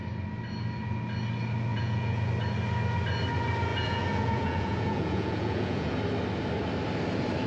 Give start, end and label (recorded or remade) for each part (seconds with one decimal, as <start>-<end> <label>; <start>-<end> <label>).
0.0-1.7 recorded; 1.7-2.3 remade; 2.3-3.7 recorded; 3.7-6.0 remade; 6.0-7.5 recorded

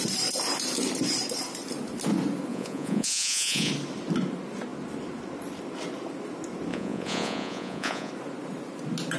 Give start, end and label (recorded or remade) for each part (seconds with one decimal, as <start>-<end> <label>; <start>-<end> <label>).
0.0-2.5 recorded; 2.5-3.7 remade; 3.7-6.7 recorded; 6.7-8.1 remade; 8.1-9.2 recorded